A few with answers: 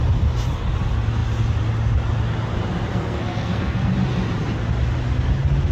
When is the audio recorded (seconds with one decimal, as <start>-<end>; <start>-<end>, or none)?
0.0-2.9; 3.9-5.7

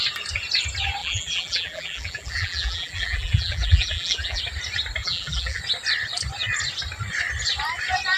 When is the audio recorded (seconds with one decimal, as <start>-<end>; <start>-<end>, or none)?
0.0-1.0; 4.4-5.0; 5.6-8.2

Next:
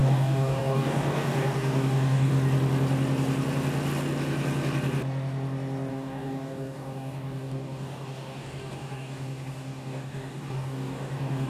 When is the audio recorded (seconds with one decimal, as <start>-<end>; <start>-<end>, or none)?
2.3-5.9

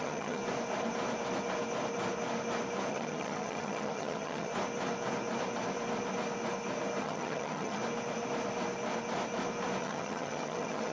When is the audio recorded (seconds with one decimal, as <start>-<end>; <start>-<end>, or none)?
0.4-2.9; 4.5-7.0; 7.8-9.8

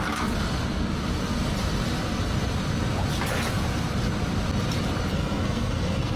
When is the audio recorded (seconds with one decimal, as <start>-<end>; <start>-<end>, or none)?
0.0-5.1

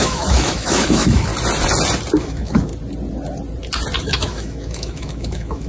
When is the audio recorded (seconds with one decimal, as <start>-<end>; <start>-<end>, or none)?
1.3-2.2; 2.7-4.0

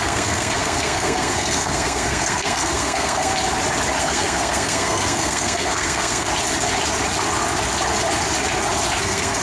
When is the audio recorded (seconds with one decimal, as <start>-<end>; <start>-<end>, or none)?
3.3-4.0; 6.3-9.0